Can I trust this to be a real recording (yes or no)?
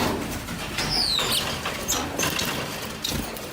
yes